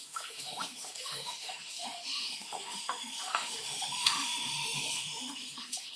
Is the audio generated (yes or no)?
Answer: yes